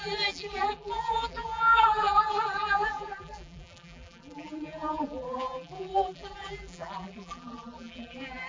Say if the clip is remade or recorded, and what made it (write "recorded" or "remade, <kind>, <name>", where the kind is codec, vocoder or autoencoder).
remade, vocoder, BigVGAN v2